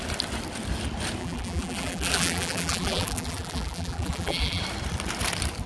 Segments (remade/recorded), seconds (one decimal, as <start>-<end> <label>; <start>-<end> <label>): 0.0-1.2 recorded; 1.2-4.6 remade; 4.6-5.7 recorded